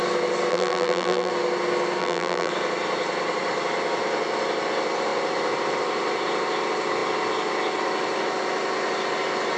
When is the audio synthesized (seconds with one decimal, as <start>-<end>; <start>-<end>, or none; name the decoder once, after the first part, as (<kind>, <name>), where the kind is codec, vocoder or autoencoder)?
0.5-1.3 (vocoder, BigVGAN v2); 2.0-2.5